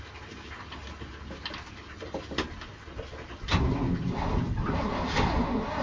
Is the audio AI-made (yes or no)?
no